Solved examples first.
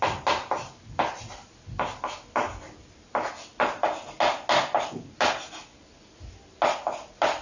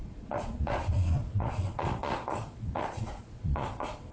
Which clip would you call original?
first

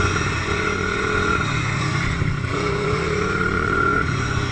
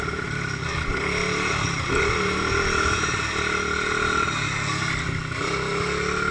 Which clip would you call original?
second